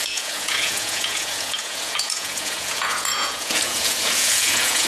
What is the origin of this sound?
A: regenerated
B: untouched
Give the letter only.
A